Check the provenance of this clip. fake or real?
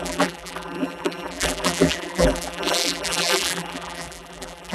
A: fake